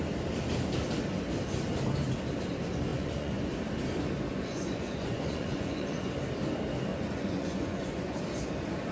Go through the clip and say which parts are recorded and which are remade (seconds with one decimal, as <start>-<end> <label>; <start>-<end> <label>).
0.0-2.9 recorded; 2.9-3.5 remade; 3.5-4.3 recorded; 4.3-6.1 remade; 6.1-6.9 recorded; 6.9-8.2 remade; 8.2-8.9 recorded